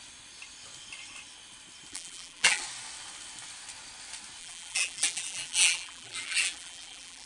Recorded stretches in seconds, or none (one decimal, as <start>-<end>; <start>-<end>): 0.0-1.9; 2.6-4.4